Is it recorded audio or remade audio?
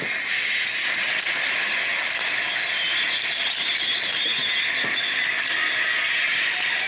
recorded